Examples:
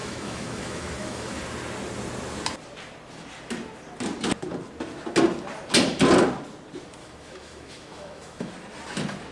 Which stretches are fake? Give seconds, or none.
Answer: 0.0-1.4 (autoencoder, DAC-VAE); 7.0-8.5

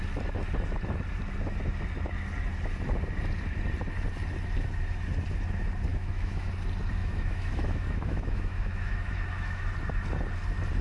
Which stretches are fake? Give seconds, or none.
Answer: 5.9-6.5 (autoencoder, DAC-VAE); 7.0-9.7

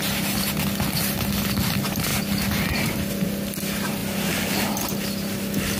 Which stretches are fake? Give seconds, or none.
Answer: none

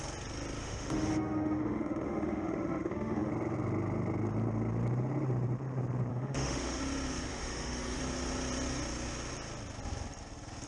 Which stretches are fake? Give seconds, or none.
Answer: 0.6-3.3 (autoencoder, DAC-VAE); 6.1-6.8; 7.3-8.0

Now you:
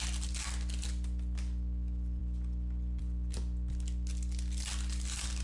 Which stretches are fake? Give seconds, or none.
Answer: none

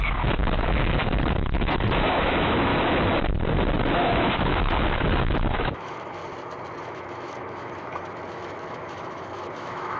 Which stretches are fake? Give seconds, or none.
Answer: 0.0-2.7 (autoencoder, DAC-VAE); 4.0-6.2; 6.8-10.0

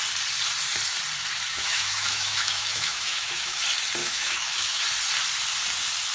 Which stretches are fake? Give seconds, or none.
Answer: 1.5-3.6 (autoencoder, DAC-VAE); 4.0-4.8

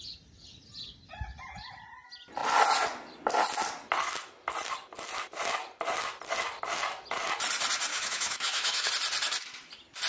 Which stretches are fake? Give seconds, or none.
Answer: 7.9-8.9 (autoencoder, DAC-VAE)